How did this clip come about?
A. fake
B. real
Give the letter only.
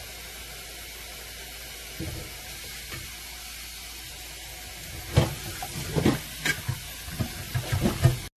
B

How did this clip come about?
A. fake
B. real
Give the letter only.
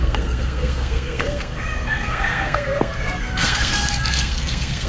A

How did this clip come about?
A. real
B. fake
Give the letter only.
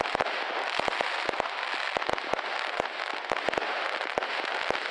A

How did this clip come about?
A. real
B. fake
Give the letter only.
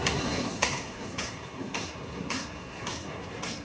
B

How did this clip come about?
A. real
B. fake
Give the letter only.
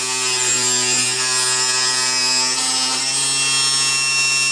A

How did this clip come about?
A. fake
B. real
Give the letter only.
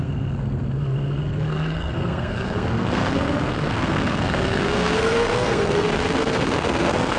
A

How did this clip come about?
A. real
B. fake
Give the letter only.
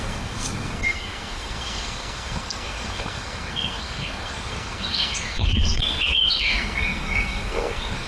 B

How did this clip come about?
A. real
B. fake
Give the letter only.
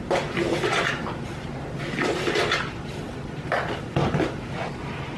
A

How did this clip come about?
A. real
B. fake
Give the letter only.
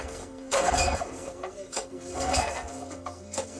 B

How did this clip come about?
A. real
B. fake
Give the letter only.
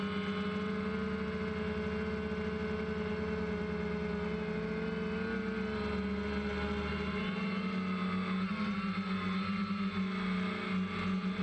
A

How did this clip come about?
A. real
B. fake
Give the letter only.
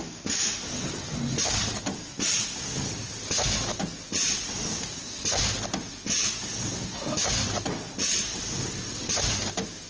A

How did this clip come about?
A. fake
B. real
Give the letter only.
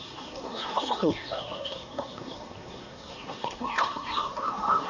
A